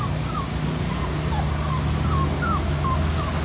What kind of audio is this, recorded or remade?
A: recorded